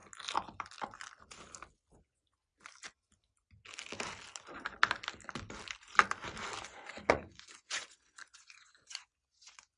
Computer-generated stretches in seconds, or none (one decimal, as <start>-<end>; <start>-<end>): 2.0-2.5; 6.6-9.8